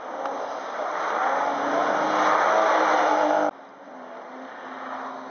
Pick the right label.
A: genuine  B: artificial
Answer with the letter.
A